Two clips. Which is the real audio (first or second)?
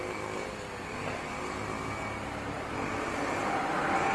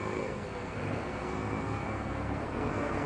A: first